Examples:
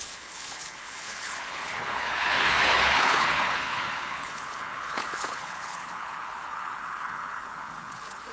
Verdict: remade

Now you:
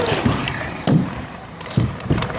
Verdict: remade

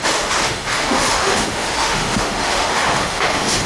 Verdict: remade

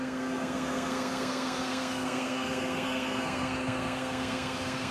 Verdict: remade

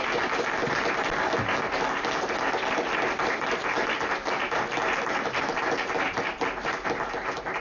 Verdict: recorded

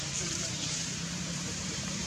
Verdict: remade